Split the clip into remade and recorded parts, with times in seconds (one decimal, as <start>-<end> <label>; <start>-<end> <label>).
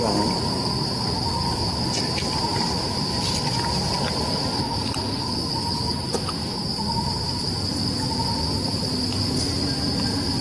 0.0-10.4 recorded